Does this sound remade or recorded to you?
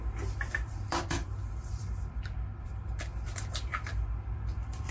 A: remade